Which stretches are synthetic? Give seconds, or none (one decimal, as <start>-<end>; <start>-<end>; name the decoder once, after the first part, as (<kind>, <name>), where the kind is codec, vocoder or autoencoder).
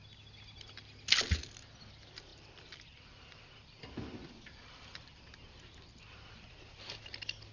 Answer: 2.3-6.8 (vocoder, BigVGAN v2)